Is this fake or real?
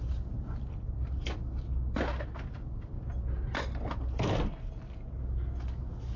real